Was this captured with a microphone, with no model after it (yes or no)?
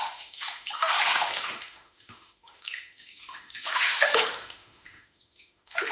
no